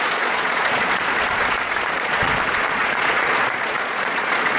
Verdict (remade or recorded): remade